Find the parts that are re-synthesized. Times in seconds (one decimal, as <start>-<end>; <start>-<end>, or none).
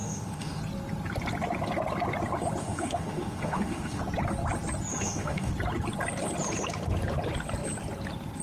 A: 0.0-0.6; 2.6-4.0; 4.9-5.5